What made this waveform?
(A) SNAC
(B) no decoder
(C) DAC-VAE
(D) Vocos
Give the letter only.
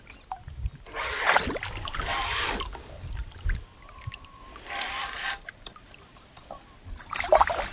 B